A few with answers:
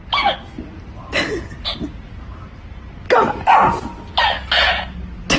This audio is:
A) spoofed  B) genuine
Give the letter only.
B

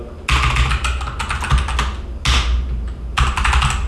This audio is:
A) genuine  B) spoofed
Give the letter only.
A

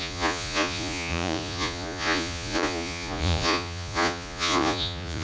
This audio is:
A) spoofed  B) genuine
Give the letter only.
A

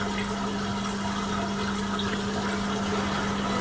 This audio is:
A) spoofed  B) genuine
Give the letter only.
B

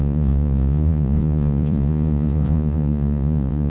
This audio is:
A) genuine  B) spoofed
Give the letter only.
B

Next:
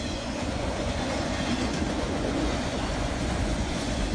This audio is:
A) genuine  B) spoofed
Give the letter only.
B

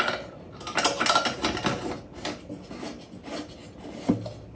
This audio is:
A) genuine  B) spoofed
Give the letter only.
A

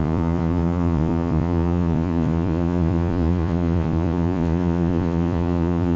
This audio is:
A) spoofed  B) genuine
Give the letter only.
A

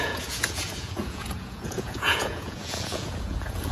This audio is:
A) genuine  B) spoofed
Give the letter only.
B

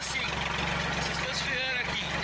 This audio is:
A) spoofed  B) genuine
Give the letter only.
B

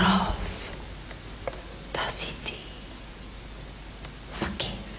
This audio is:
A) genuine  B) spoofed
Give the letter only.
A